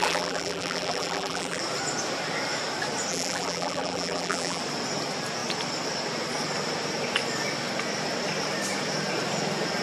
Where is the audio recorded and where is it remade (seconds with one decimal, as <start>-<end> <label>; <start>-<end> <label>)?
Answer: 0.0-1.6 remade; 1.6-3.1 recorded; 3.1-4.6 remade; 4.6-9.8 recorded